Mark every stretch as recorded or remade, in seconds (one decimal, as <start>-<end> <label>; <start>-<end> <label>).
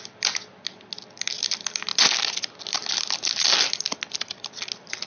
0.0-5.1 recorded